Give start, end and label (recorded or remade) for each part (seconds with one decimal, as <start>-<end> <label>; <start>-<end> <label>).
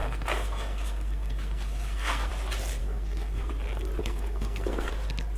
0.0-2.3 remade; 2.3-2.8 recorded; 2.8-3.5 remade; 3.5-4.0 recorded; 4.0-4.9 remade; 4.9-5.4 recorded